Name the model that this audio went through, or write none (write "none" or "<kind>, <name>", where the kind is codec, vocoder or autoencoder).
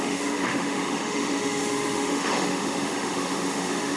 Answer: autoencoder, DAC-VAE